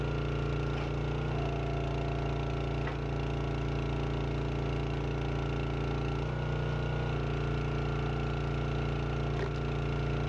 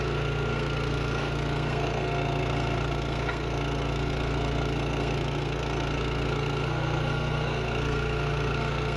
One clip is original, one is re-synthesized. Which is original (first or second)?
first